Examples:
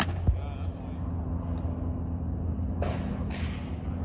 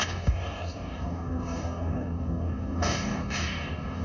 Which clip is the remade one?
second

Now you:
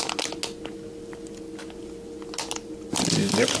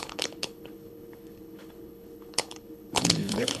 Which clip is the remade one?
second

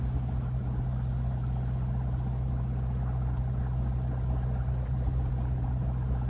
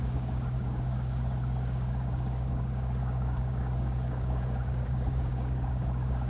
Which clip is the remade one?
second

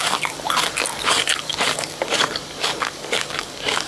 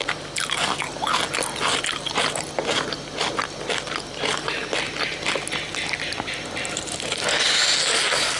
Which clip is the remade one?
first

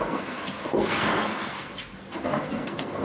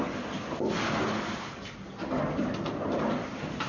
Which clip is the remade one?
first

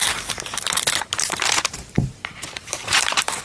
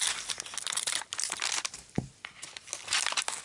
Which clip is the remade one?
first